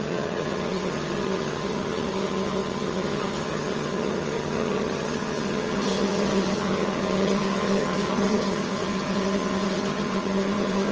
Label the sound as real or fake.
fake